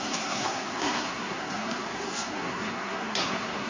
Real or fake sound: fake